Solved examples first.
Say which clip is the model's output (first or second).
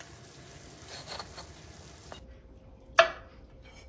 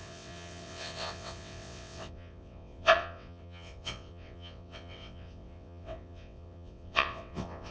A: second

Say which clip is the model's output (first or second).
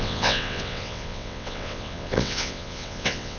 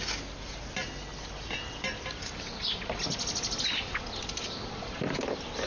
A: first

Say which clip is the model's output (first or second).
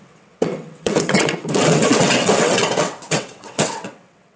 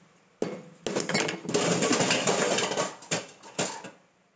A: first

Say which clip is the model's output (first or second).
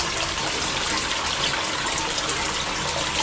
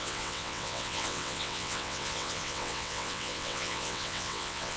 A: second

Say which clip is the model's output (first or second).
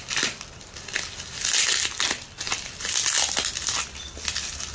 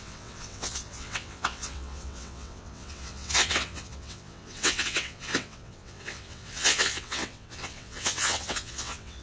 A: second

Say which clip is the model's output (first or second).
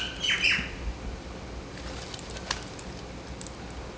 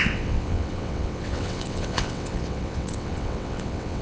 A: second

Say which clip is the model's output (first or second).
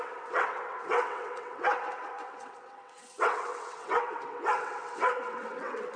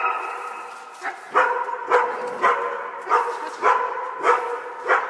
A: first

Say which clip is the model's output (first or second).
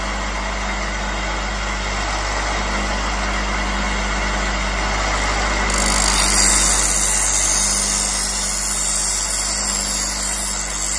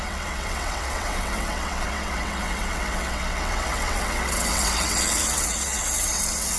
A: second